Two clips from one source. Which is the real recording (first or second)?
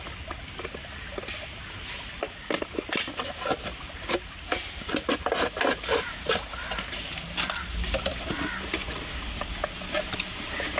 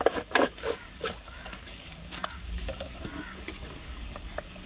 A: first